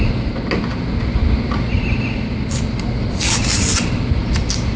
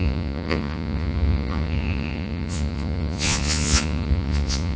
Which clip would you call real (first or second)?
first